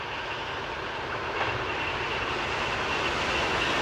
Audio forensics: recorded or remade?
recorded